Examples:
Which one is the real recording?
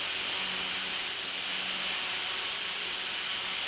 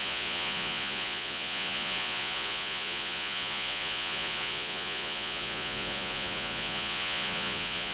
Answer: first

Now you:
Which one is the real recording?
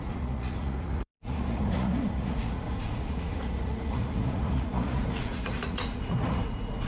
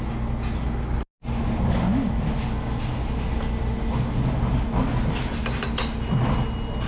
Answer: second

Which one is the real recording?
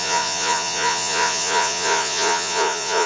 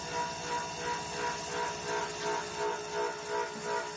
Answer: second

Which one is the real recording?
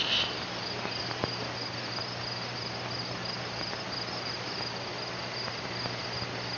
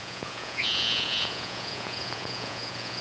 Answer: first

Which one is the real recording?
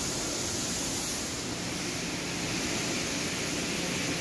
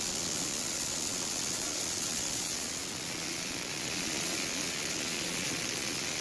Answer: first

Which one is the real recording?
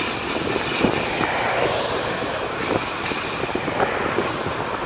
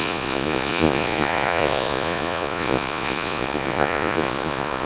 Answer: first